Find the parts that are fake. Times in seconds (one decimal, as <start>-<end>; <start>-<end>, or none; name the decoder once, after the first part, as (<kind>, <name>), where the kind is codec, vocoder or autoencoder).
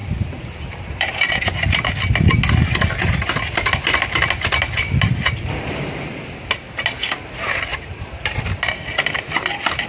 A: 0.0-1.3 (vocoder, BigVGAN v2); 7.7-8.5